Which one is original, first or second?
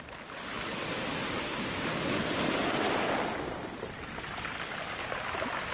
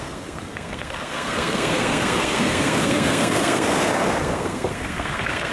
first